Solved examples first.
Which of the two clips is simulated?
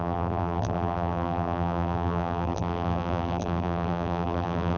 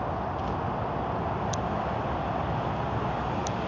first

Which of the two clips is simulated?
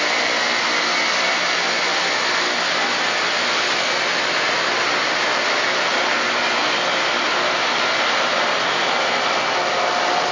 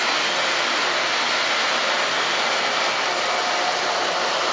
second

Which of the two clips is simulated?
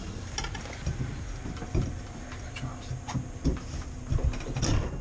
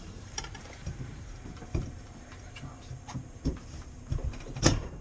second